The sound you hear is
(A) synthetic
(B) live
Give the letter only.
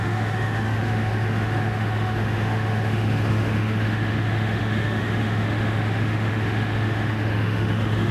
A